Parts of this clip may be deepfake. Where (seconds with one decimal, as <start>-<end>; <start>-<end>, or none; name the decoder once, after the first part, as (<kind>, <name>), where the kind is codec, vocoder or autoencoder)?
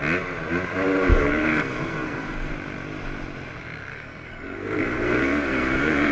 1.1-2.5 (codec, SNAC); 3.9-6.1